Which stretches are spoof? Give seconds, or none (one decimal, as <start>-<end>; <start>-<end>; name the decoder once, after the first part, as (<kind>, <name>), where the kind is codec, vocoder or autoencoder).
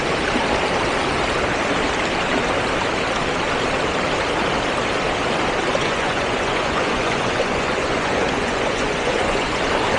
5.8-9.6 (vocoder, Vocos)